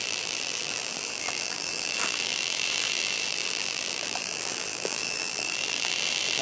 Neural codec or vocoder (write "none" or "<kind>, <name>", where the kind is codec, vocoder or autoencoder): vocoder, BigVGAN v2